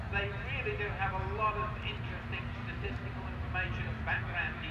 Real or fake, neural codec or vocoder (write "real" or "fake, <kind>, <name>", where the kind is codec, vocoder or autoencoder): real